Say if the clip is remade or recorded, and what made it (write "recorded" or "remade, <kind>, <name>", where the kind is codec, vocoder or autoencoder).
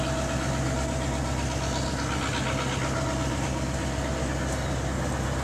recorded